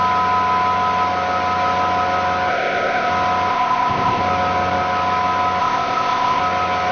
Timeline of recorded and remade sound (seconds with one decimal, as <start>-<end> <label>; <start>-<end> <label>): 0.0-2.5 recorded; 2.5-3.1 remade; 3.1-3.5 recorded; 3.5-4.2 remade; 4.2-5.6 recorded; 5.6-6.4 remade; 6.4-6.9 recorded